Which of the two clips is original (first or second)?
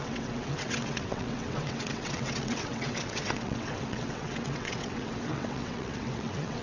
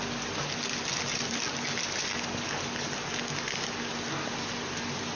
second